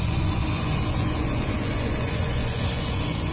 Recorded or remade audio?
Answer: remade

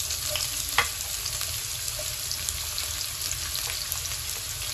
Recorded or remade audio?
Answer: recorded